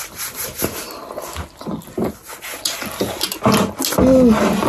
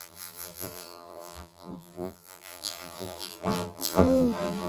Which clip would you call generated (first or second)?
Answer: second